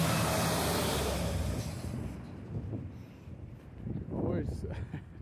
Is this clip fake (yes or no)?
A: no